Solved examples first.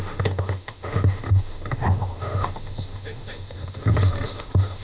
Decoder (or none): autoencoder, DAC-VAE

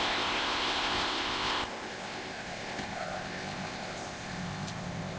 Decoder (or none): codec, ZipCodec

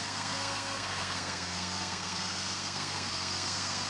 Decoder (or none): codec, SNAC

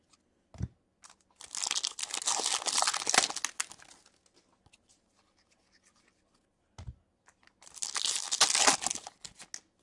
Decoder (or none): none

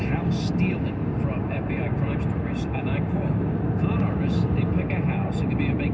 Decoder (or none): none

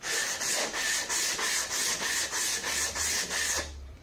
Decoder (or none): vocoder, BigVGAN v2